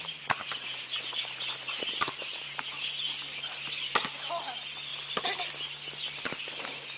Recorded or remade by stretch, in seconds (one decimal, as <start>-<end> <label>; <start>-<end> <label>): 0.0-7.0 recorded